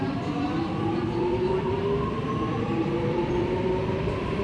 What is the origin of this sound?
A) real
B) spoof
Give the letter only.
B